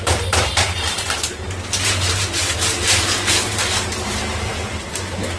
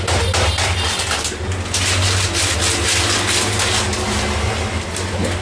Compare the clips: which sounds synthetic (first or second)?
first